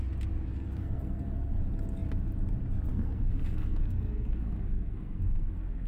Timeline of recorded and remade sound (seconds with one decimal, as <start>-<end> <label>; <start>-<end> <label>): 0.0-0.5 recorded; 0.5-1.6 remade; 1.6-2.9 recorded; 2.9-5.9 remade